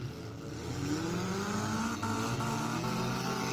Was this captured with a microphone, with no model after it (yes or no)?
yes